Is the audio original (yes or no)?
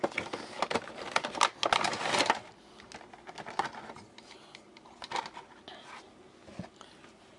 yes